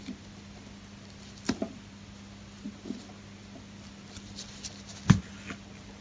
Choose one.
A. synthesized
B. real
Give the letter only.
B